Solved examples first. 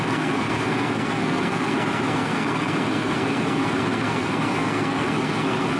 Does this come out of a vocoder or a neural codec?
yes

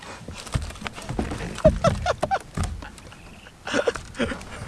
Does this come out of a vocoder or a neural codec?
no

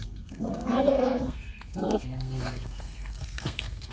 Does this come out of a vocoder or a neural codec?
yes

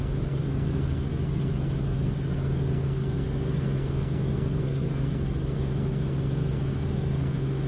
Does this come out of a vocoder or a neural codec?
yes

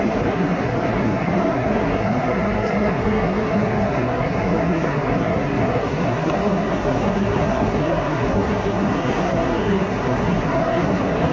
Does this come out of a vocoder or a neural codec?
yes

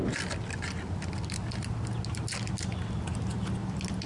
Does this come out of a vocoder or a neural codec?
no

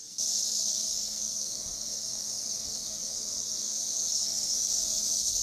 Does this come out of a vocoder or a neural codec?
yes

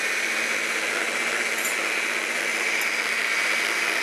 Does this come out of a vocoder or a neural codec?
no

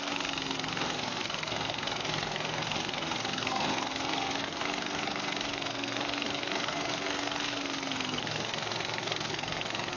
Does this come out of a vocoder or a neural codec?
yes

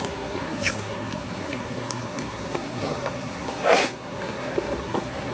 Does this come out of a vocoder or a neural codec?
yes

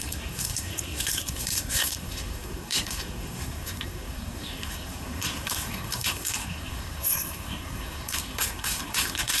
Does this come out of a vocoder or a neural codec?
yes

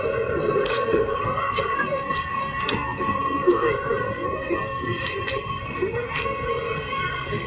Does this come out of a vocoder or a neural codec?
yes